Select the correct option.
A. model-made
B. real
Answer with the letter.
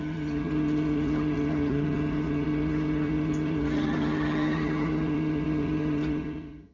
A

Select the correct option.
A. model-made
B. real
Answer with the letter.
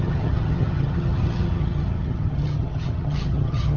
A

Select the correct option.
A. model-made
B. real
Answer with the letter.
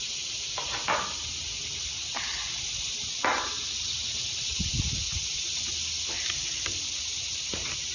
B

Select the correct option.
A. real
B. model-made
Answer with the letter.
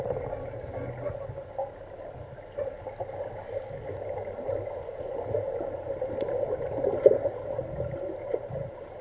A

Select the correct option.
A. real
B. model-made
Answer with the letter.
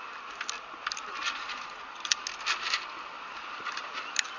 A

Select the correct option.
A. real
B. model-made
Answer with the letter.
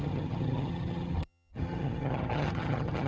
B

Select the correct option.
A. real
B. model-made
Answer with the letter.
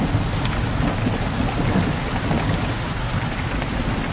A